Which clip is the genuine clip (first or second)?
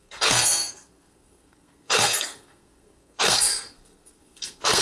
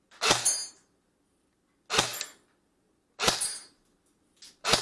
second